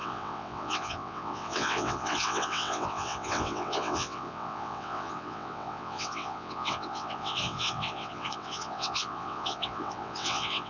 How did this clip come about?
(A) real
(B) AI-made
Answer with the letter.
B